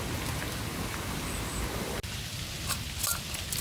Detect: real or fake real